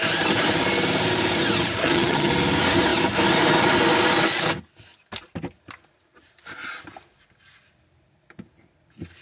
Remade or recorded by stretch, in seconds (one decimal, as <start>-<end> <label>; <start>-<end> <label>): 0.0-1.8 recorded; 1.8-2.3 remade; 2.3-9.2 recorded